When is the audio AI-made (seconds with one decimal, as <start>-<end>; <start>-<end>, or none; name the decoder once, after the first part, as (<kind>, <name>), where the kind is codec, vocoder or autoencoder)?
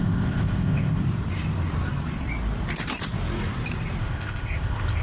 0.0-1.0 (codec, ZipCodec); 4.0-5.0